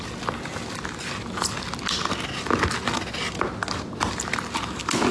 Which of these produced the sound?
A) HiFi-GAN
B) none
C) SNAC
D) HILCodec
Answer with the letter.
B